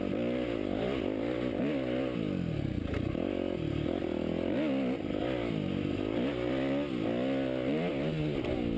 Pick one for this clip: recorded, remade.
recorded